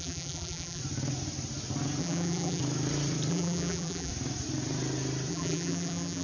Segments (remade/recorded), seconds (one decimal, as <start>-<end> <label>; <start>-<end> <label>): 0.0-0.8 remade; 0.8-2.0 recorded; 2.0-2.6 remade; 2.6-3.3 recorded; 3.3-4.1 remade; 4.1-5.3 recorded; 5.3-6.2 remade